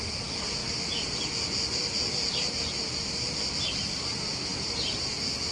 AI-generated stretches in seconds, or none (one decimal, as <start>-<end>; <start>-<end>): none